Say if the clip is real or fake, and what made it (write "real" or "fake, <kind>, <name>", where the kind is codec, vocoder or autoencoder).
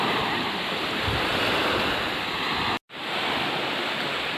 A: real